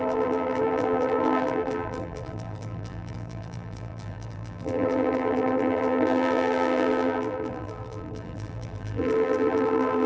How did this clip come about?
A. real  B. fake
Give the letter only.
B